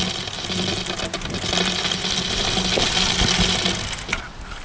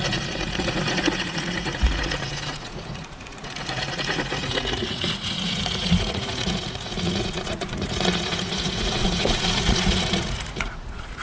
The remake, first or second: second